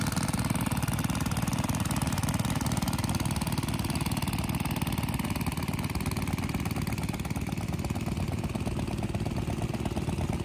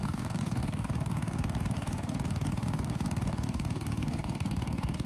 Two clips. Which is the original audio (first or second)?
first